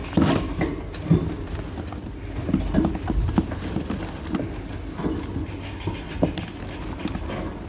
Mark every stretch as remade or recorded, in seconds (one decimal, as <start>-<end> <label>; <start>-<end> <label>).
0.0-7.7 recorded